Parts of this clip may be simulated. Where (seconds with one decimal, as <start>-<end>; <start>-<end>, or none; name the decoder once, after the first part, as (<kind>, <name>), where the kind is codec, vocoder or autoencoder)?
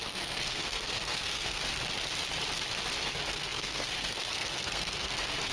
0.0-1.6 (codec, SNAC); 3.0-5.5